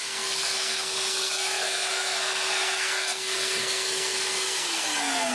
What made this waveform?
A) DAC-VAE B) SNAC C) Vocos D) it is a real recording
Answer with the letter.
B